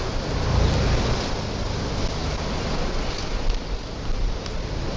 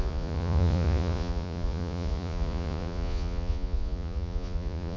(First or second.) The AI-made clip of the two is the second